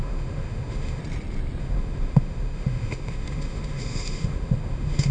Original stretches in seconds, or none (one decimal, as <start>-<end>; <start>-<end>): 1.0-1.6